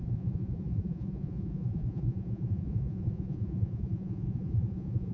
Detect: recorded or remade remade